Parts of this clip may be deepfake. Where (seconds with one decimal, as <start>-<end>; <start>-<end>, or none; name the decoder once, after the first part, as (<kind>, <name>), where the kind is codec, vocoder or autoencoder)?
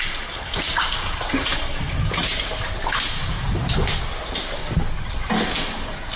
none